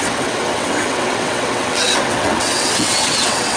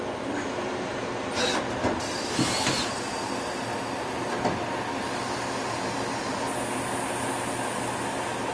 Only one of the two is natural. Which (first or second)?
second